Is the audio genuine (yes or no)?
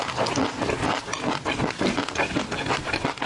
yes